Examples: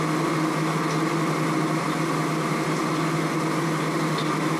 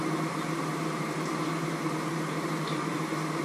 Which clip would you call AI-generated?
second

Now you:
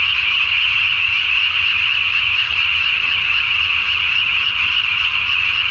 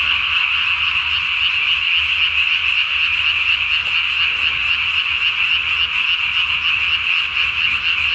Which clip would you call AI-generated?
first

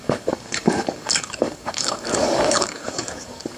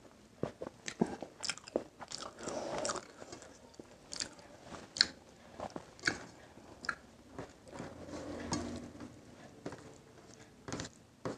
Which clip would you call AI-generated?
first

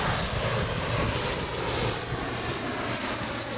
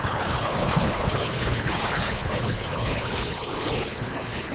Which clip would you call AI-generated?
second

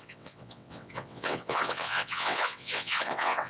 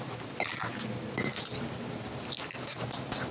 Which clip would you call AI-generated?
first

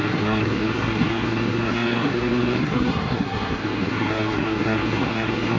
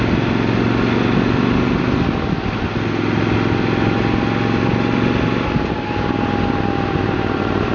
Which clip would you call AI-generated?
first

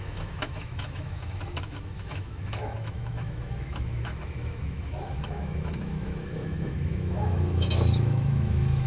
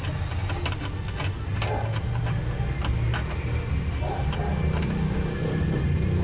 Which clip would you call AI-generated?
first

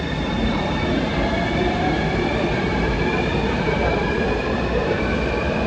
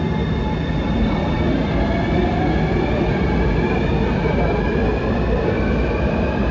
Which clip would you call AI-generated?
first